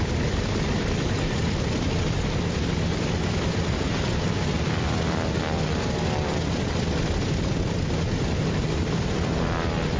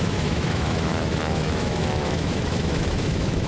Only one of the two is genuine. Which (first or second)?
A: first